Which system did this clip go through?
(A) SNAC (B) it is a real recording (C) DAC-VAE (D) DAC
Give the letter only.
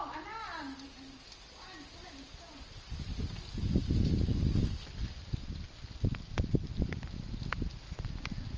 B